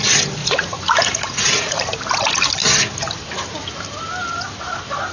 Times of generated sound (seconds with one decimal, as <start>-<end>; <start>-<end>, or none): 0.4-1.8